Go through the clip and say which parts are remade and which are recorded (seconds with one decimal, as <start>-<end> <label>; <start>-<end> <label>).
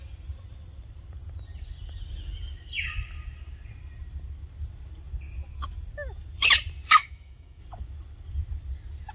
0.0-7.0 recorded; 7.0-7.6 remade; 7.6-9.1 recorded